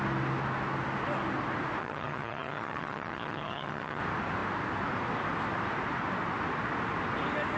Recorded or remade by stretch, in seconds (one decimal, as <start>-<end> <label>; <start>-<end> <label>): 0.0-1.8 recorded; 1.8-4.0 remade; 4.0-7.6 recorded